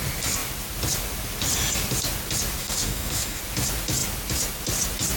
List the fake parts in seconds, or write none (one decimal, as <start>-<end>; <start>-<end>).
2.6-3.4